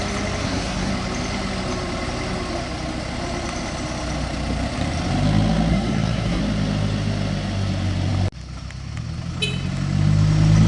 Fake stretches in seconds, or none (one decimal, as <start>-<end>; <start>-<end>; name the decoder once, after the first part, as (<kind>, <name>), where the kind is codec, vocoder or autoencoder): 0.4-0.9 (codec, SNAC); 5.7-6.4